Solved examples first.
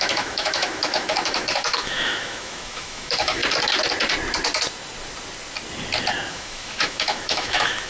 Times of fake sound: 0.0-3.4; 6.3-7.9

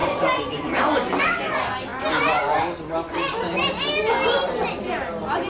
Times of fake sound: 0.0-1.9

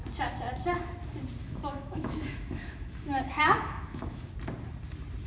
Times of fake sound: 1.4-4.3

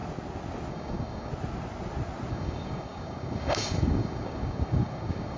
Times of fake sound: 0.7-1.3; 2.3-5.4

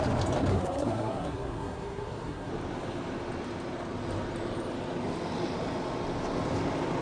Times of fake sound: 0.5-2.5